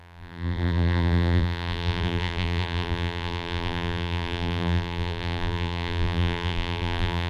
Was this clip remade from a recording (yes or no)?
yes